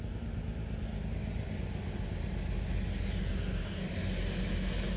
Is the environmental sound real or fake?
real